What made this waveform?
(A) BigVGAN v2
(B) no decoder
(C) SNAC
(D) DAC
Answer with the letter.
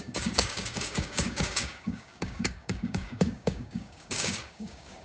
D